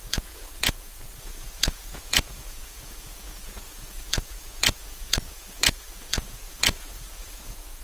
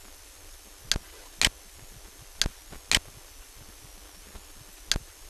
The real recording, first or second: second